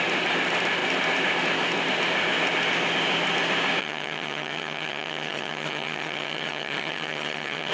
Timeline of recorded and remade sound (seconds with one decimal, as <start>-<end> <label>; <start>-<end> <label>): 0.0-3.8 recorded; 3.8-7.7 remade